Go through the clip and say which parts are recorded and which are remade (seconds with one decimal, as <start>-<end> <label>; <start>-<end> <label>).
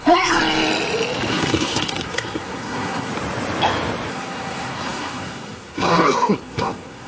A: 0.0-0.4 remade; 0.4-1.3 recorded; 1.3-3.1 remade; 3.1-4.1 recorded; 4.1-7.1 remade